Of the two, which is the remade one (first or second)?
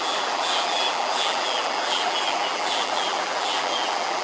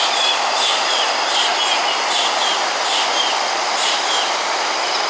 first